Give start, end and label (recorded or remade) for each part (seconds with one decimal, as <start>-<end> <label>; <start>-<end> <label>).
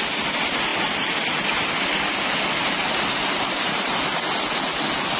0.0-5.2 recorded